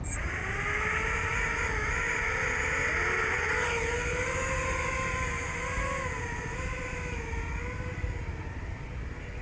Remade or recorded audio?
recorded